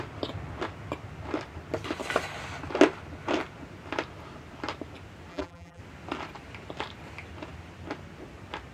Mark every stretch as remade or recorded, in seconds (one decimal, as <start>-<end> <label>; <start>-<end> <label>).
0.0-5.3 recorded; 5.3-5.8 remade; 5.8-8.7 recorded